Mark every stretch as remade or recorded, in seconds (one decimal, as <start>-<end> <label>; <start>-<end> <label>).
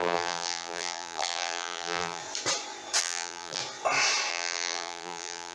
0.0-2.2 remade; 2.2-3.0 recorded; 3.0-3.6 remade; 3.6-4.3 recorded; 4.3-5.5 remade